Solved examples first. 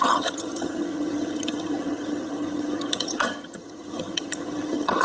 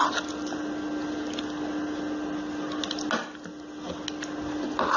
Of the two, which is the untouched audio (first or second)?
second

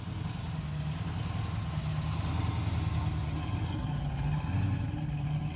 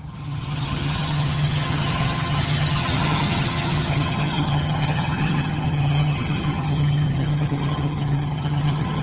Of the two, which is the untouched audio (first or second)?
first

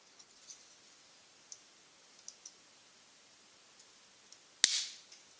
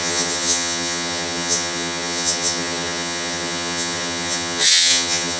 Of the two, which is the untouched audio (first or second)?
first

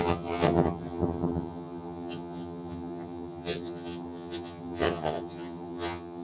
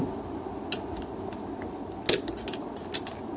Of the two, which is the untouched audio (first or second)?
second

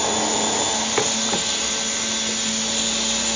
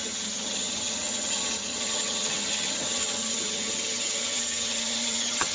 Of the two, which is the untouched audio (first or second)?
first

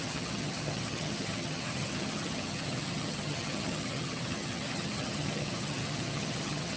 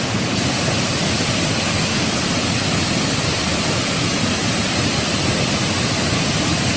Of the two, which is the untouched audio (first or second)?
second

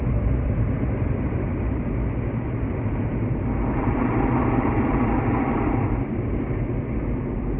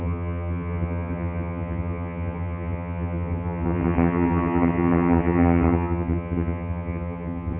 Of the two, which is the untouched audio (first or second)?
first